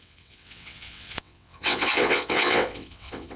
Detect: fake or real fake